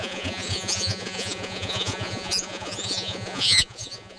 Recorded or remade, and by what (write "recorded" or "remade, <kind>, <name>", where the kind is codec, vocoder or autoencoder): remade, vocoder, Vocos